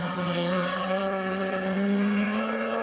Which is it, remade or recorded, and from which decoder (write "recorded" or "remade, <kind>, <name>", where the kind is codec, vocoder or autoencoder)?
remade, vocoder, HiFi-GAN